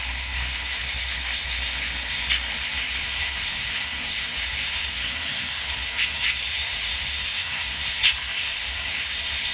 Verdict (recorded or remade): remade